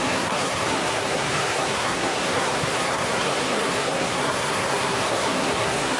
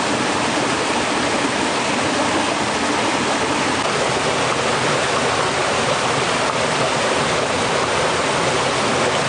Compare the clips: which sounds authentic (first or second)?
second